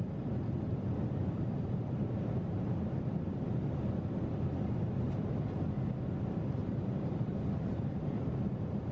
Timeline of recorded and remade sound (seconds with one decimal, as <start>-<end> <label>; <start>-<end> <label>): 0.0-1.2 recorded; 1.2-2.8 remade; 2.8-6.6 recorded; 6.6-8.3 remade; 8.3-8.9 recorded